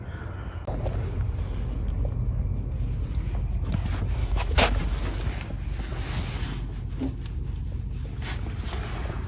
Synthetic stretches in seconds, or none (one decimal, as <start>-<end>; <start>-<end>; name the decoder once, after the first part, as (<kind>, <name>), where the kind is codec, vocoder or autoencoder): 4.2-4.8 (autoencoder, DAC-VAE)

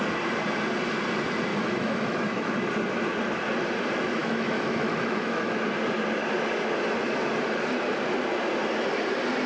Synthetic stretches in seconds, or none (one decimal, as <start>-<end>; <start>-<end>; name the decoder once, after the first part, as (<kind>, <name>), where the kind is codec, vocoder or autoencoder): 1.5-2.6 (autoencoder, DAC-VAE); 4.2-5.6

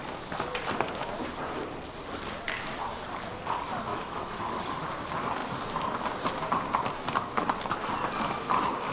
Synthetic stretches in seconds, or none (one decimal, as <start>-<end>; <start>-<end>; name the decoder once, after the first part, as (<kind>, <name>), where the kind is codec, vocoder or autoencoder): 3.9-4.9 (autoencoder, DAC-VAE)

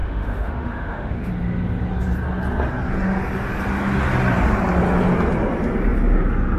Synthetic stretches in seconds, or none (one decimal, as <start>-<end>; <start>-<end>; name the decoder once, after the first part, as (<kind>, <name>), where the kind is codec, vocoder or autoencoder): 0.0-1.3 (autoencoder, DAC-VAE)

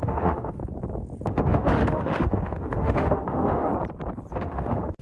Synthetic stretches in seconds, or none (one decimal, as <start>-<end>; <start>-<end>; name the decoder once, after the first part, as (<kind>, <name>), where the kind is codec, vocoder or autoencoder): 0.0-0.6 (autoencoder, DAC-VAE); 1.3-3.7; 4.3-5.0

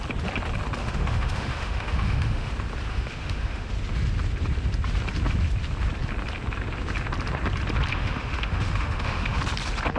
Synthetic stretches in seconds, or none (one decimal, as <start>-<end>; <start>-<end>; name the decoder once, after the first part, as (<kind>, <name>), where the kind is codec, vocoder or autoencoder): 0.8-2.5 (autoencoder, DAC-VAE); 2.9-3.7; 7.9-9.4

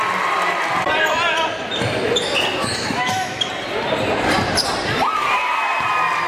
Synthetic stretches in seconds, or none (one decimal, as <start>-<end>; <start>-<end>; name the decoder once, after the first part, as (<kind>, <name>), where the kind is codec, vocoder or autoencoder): 2.6-3.5 (autoencoder, DAC-VAE)